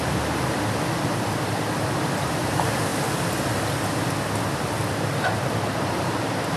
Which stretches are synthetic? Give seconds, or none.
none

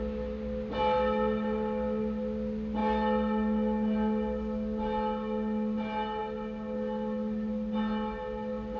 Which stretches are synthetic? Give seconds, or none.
none

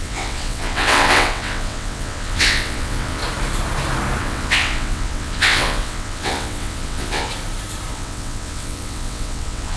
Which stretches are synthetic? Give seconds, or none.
0.0-3.2 (vocoder, WaveNeXt); 4.2-7.3; 7.9-9.8

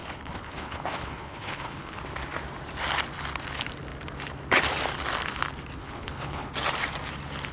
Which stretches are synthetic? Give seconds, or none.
0.0-2.0 (codec, HILCodec); 5.8-6.5

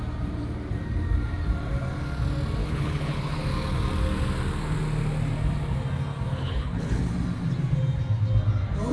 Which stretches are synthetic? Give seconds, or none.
2.6-3.4 (codec, HILCodec); 6.3-7.1

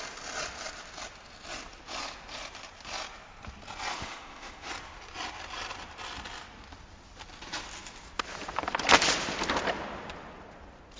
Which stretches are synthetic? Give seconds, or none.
3.9-4.7 (autoencoder, DAC-VAE)

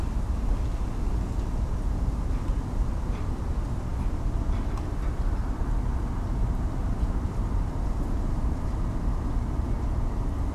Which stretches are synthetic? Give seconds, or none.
5.9-8.8 (vocoder, BigVGAN v2)

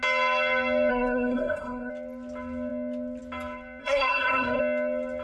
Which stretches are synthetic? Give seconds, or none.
0.9-1.9 (codec, SNAC); 3.8-4.6